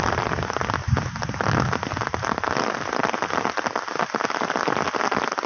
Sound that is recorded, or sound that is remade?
recorded